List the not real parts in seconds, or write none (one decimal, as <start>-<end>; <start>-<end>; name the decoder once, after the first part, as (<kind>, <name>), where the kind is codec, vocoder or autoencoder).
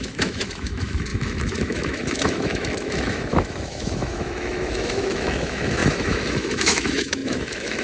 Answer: 0.0-7.8 (autoencoder, DAC-VAE)